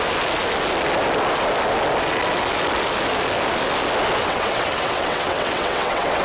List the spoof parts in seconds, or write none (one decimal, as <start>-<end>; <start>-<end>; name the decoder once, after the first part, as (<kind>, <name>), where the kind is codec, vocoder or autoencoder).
4.2-6.2 (vocoder, WaveNeXt)